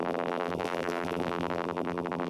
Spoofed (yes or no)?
yes